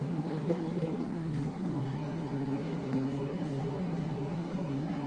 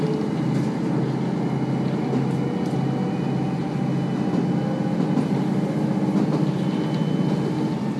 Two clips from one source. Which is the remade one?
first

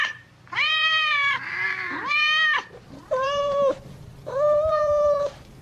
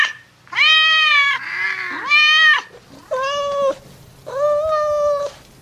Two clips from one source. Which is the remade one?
first